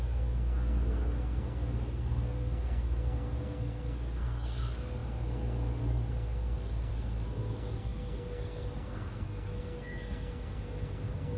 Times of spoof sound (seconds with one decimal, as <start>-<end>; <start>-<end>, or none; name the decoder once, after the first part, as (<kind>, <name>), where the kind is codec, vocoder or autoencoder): 0.0-11.4 (codec, SNAC)